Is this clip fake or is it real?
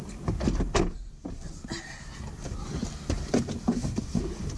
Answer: real